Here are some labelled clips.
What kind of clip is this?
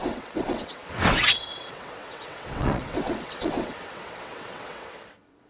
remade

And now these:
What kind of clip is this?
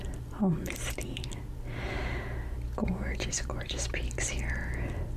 recorded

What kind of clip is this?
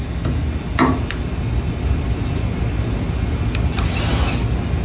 recorded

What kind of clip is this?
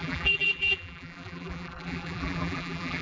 remade